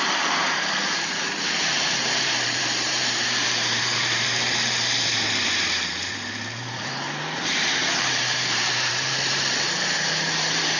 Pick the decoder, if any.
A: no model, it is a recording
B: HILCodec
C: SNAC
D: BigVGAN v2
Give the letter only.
D